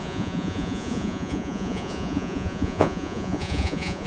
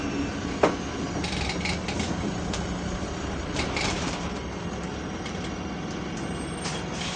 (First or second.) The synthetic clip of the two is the first